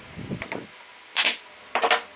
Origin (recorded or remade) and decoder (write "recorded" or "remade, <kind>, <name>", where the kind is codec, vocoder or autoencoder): recorded